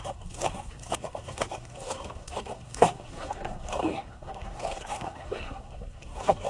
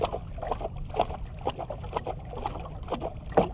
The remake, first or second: first